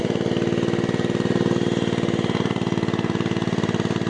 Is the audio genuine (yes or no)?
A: yes